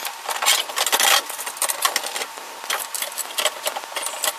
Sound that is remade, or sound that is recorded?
recorded